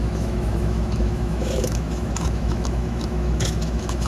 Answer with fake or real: fake